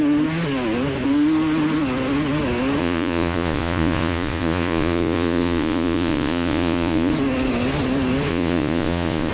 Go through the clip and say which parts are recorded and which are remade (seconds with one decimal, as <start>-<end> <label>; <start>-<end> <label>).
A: 0.0-2.8 recorded; 2.8-7.1 remade; 7.1-8.3 recorded; 8.3-9.3 remade